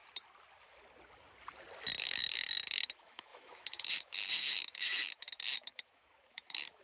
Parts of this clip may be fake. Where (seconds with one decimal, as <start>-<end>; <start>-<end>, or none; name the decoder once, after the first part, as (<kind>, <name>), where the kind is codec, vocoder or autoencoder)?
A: 2.0-6.8 (autoencoder, DAC-VAE)